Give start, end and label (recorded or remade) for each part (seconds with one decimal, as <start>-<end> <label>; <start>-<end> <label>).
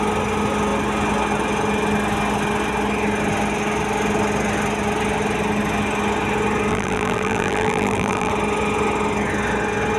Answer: 0.0-6.7 recorded; 6.7-8.3 remade; 8.3-10.0 recorded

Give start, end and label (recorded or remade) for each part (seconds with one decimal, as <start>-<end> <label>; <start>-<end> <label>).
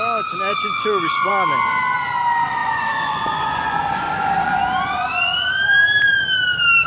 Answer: 0.0-0.5 recorded; 0.5-1.3 remade; 1.3-2.6 recorded; 2.6-5.5 remade; 5.5-6.9 recorded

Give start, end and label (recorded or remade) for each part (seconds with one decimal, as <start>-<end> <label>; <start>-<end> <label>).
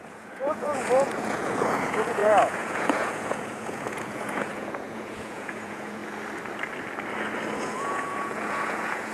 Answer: 0.0-6.0 remade; 6.0-7.6 recorded; 7.6-9.1 remade